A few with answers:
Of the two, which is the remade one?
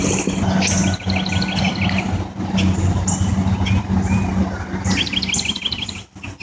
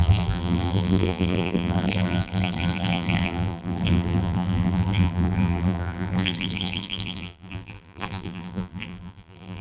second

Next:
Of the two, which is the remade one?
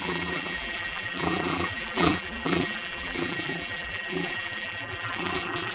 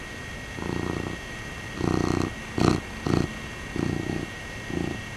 first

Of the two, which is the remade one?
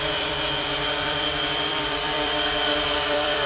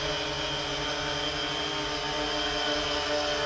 first